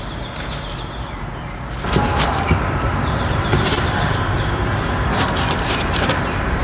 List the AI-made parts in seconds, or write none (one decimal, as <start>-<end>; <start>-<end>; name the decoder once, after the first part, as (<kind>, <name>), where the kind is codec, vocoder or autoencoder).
2.9-6.6 (vocoder, BigVGAN v2)